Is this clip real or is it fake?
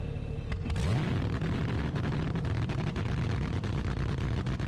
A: real